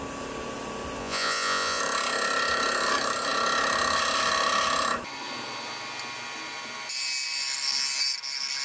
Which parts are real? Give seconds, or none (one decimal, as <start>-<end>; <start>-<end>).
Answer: 0.0-1.0; 1.8-8.6